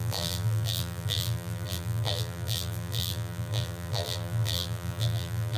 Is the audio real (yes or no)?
no